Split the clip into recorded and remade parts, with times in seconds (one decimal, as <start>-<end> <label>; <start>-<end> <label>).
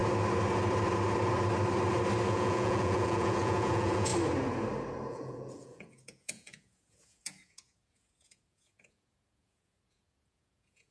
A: 0.0-2.3 recorded; 2.3-4.1 remade; 4.1-5.1 recorded; 5.1-10.9 remade